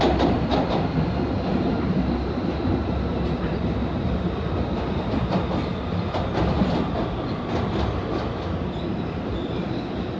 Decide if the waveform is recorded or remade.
recorded